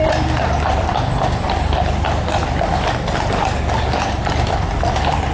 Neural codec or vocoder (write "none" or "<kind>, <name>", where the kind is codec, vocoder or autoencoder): none